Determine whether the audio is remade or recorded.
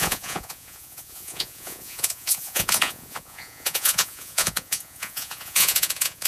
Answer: remade